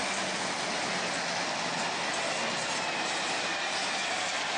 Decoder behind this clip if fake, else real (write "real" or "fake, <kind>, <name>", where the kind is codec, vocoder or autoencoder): real